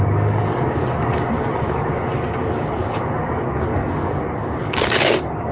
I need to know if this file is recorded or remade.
remade